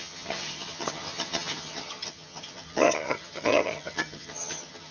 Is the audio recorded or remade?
remade